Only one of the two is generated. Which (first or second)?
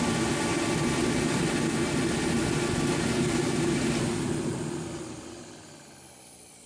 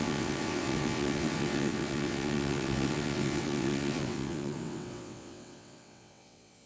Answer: second